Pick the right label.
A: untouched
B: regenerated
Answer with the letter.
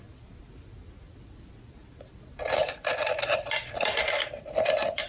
A